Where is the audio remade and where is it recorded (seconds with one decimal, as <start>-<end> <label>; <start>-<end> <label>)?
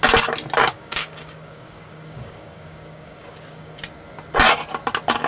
0.0-0.6 recorded; 0.6-3.8 remade; 3.8-5.3 recorded